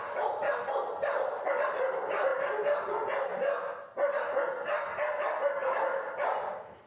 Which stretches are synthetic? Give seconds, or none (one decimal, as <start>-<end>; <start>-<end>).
none